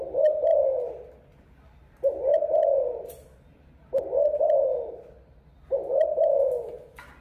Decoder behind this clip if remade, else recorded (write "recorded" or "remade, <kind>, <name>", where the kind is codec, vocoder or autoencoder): recorded